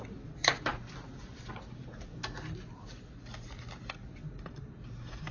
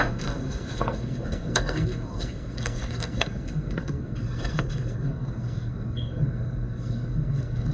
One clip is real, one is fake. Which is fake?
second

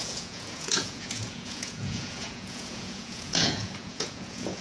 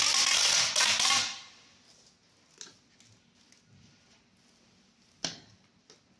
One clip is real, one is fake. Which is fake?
first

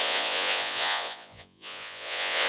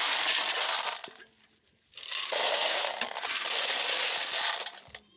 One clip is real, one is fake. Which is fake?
first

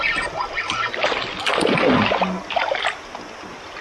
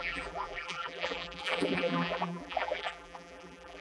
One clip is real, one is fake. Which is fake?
second